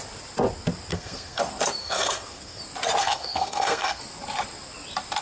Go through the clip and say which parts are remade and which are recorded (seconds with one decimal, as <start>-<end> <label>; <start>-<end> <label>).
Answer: 0.0-0.9 recorded; 0.9-1.4 remade; 1.4-1.8 recorded; 1.8-2.6 remade; 2.6-3.0 recorded; 3.0-4.0 remade; 4.0-5.2 recorded